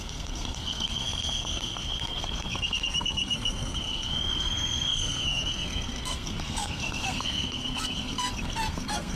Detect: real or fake fake